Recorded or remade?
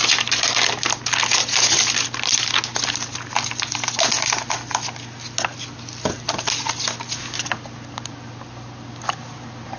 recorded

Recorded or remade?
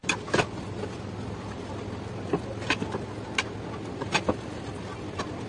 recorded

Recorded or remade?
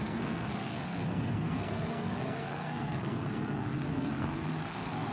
remade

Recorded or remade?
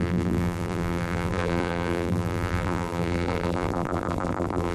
remade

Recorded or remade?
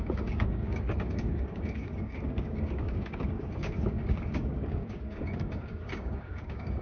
remade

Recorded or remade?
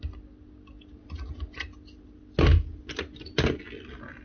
recorded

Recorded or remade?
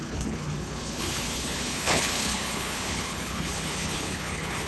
remade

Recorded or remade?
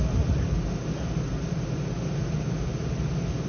recorded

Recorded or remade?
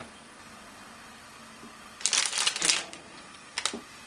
recorded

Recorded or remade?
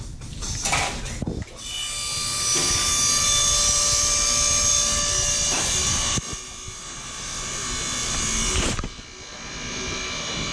recorded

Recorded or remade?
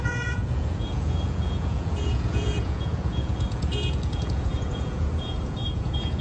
remade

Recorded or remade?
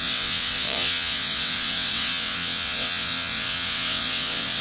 remade